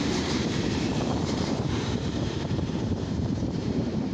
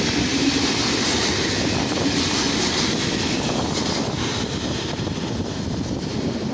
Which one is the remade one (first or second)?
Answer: first